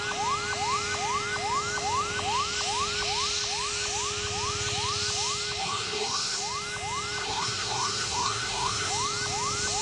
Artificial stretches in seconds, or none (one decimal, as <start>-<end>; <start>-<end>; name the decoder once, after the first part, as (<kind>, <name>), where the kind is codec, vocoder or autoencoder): 5.6-6.4 (codec, SNAC); 7.2-8.9